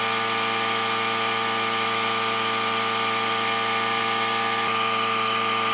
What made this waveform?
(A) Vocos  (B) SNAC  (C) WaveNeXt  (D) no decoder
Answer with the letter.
D